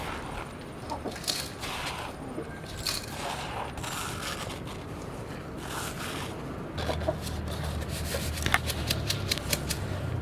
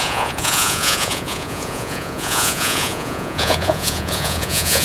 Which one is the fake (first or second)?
second